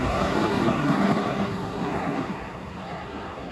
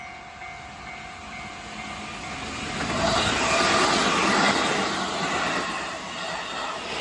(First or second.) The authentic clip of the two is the second